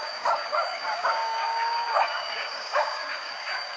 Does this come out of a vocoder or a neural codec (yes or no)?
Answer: yes